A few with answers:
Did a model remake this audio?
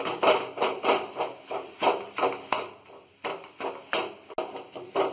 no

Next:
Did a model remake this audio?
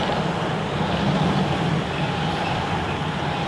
no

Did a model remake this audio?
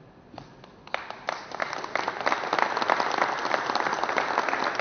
no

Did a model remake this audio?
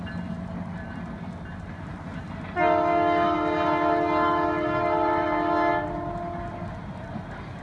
no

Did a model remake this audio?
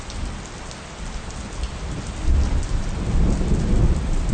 no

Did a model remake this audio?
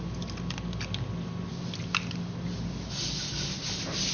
no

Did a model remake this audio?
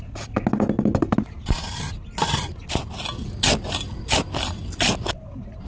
no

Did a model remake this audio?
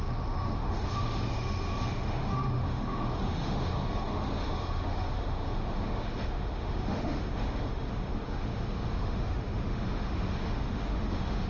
yes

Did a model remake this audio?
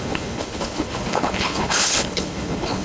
yes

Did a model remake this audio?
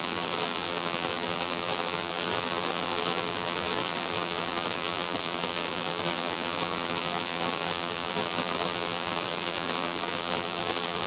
yes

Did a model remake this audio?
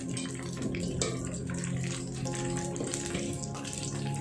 no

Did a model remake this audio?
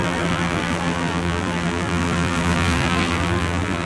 yes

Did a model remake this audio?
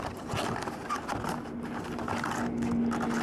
no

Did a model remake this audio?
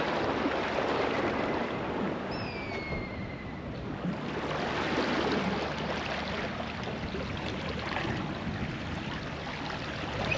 no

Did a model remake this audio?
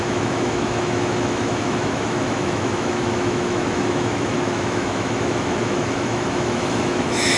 yes